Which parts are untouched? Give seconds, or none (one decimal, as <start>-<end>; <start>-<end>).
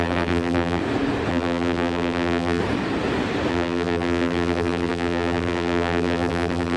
0.8-1.3; 2.6-3.5